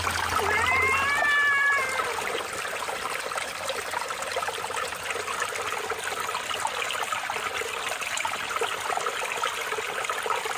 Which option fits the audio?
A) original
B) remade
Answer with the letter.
A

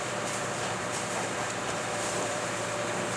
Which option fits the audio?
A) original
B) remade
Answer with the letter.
B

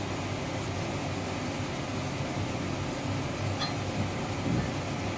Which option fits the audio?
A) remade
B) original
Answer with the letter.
B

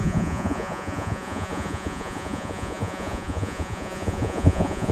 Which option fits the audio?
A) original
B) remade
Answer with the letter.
B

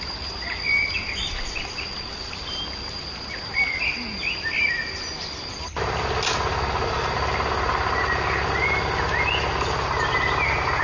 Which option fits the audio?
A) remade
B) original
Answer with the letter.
B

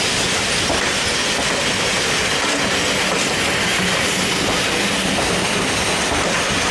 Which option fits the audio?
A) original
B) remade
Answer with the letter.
A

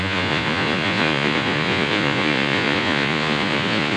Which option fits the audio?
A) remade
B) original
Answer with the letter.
A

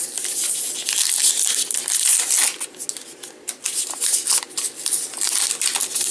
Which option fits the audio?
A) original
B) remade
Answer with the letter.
A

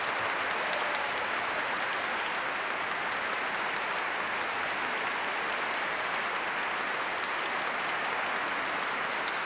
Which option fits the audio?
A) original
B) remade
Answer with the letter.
A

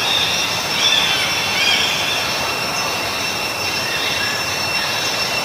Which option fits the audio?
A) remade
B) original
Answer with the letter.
B